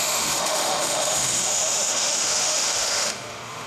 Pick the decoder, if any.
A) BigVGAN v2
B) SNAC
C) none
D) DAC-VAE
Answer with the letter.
D